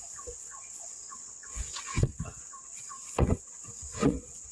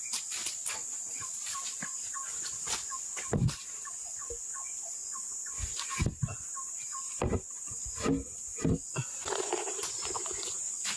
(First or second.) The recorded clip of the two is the second